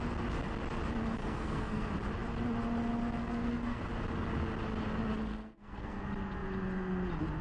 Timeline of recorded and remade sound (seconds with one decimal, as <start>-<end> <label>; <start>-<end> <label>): 0.0-1.2 recorded; 1.2-1.9 remade; 1.9-3.2 recorded; 3.2-3.8 remade; 3.8-5.3 recorded; 5.3-6.0 remade; 6.0-7.4 recorded

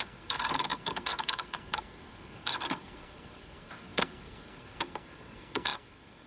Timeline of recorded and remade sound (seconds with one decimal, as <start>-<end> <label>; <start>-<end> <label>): 0.0-6.3 remade

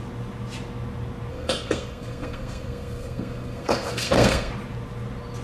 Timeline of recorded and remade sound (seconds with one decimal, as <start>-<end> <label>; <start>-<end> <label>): 0.0-1.3 recorded; 1.3-4.5 remade; 4.5-5.4 recorded

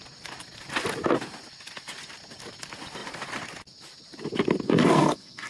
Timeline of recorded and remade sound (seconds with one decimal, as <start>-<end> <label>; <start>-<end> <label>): 0.0-4.8 recorded; 4.8-5.5 remade

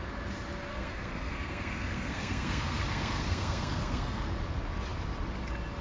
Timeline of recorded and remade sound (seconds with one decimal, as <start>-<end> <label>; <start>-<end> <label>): 0.0-0.7 recorded; 0.7-4.2 remade; 4.2-5.8 recorded

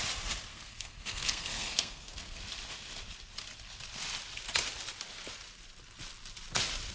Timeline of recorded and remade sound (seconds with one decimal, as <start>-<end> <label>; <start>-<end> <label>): 0.0-0.5 recorded; 0.5-2.4 remade; 2.4-6.9 recorded

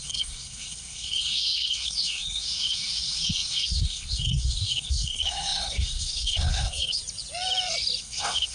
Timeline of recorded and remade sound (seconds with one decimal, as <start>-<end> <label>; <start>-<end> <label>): 0.0-7.0 remade; 7.0-8.0 recorded; 8.0-8.5 remade

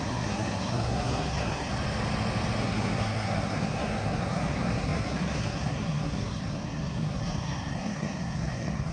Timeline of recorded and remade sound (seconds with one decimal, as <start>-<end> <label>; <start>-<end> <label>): 0.0-1.7 remade; 1.7-2.6 recorded; 2.6-8.9 remade